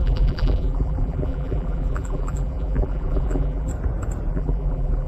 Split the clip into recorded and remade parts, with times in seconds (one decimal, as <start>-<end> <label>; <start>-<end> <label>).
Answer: 0.0-3.7 remade; 3.7-4.3 recorded; 4.3-5.1 remade